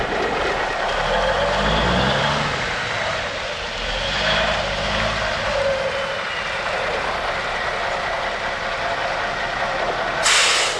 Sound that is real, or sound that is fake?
real